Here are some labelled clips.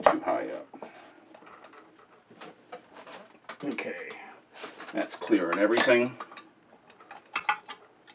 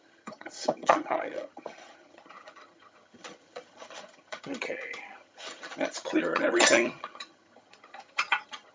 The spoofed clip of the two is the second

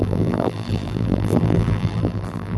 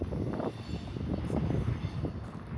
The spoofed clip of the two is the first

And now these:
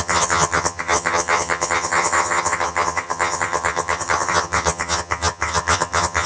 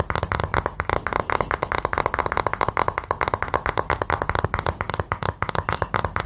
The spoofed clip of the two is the first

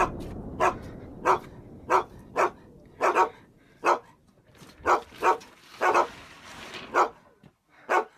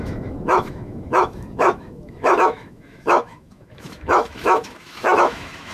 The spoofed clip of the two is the second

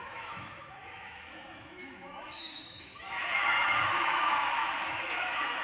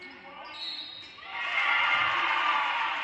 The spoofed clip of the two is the first